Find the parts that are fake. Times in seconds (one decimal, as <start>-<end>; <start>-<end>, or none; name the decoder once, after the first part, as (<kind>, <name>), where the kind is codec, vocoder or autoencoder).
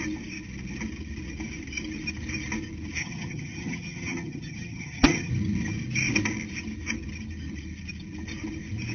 3.0-5.3 (vocoder, HiFi-GAN)